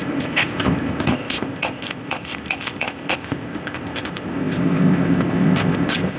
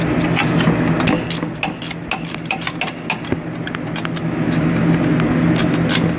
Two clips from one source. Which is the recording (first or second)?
second